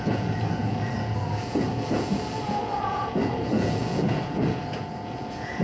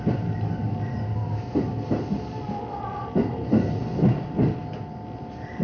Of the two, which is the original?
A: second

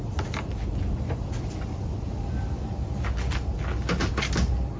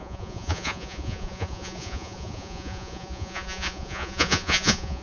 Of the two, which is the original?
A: first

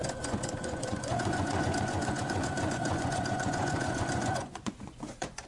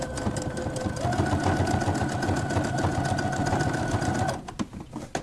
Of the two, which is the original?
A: second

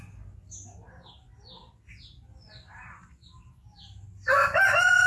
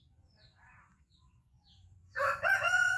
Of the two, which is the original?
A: first